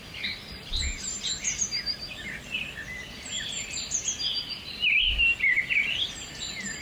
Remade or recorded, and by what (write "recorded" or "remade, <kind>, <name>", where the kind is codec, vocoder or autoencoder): remade, vocoder, BigVGAN v2